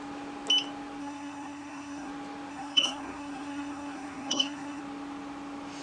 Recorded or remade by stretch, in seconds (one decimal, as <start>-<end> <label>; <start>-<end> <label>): 0.0-1.0 recorded; 1.0-2.1 remade; 2.1-2.5 recorded; 2.5-4.8 remade; 4.8-5.8 recorded